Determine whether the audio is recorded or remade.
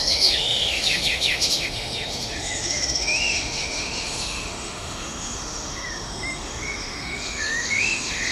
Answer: remade